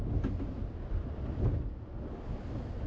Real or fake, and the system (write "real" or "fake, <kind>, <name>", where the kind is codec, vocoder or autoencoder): real